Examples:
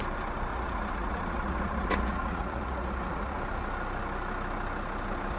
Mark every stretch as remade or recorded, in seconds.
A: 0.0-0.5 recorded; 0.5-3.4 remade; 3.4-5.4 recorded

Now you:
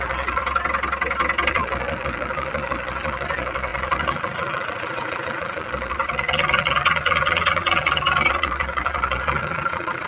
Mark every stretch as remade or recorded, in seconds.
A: 0.0-0.4 remade; 0.4-1.5 recorded; 1.5-10.1 remade

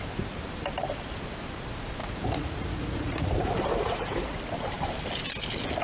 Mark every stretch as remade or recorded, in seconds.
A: 0.0-2.0 recorded; 2.0-4.4 remade; 4.4-5.8 recorded

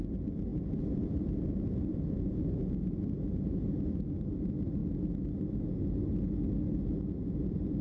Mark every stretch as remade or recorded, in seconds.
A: 0.0-1.9 recorded; 1.9-3.9 remade; 3.9-7.8 recorded